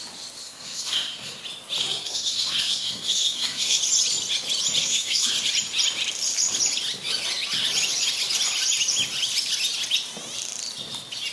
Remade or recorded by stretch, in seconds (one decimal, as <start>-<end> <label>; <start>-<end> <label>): 0.0-0.4 recorded; 0.4-1.4 remade; 1.4-1.8 recorded; 1.8-3.8 remade; 3.8-4.8 recorded; 4.8-5.3 remade; 5.3-11.3 recorded